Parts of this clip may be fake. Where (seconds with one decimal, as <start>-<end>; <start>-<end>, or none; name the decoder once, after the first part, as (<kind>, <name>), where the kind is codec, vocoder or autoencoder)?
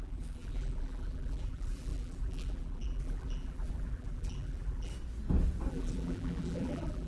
0.0-4.9 (vocoder, BigVGAN v2); 5.7-7.1